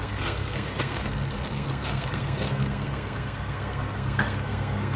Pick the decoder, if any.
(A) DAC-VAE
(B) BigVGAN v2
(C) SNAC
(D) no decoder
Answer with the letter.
C